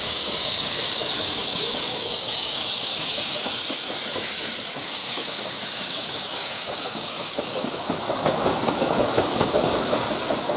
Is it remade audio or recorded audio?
remade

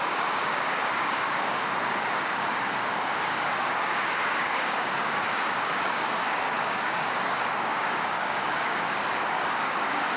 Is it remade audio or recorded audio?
remade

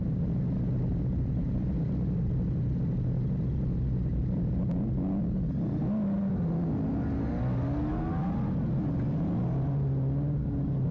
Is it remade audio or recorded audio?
recorded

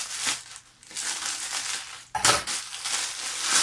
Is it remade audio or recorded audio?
recorded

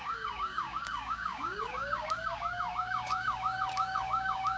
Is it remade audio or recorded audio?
remade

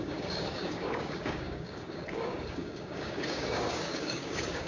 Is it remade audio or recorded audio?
remade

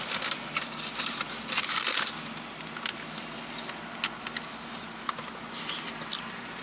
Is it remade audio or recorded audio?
recorded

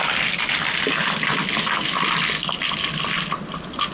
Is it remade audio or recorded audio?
recorded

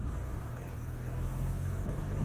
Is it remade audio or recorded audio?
remade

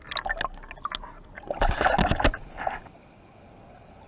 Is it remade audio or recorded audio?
recorded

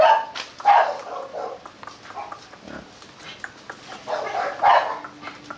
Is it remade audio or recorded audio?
recorded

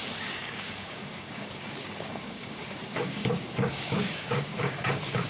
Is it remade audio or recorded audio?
remade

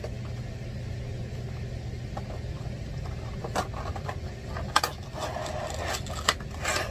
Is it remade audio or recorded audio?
recorded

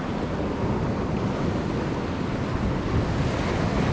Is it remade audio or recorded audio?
recorded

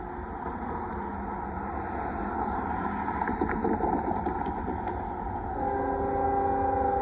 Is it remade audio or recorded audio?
recorded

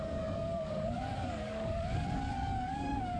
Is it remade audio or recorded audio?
remade